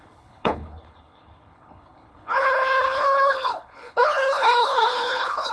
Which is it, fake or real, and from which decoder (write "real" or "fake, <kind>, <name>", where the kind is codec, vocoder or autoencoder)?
fake, codec, HILCodec